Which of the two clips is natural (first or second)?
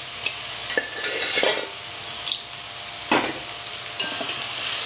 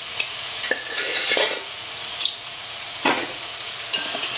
first